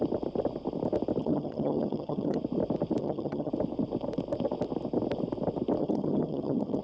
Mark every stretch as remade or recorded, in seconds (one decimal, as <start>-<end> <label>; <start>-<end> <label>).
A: 0.0-1.2 recorded; 1.2-2.4 remade; 2.4-3.0 recorded; 3.0-3.5 remade; 3.5-5.8 recorded; 5.8-6.8 remade